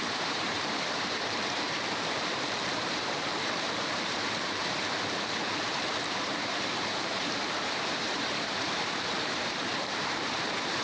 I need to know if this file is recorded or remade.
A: remade